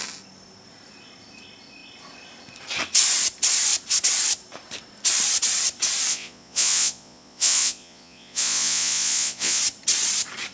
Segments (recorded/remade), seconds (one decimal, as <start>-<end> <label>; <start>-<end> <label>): 0.0-6.1 recorded; 6.1-9.6 remade; 9.6-10.5 recorded